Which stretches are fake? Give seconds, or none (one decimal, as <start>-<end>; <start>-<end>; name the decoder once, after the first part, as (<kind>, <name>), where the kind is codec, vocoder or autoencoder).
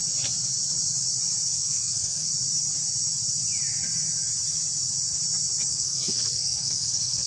1.6-2.3 (codec, SNAC); 5.7-7.3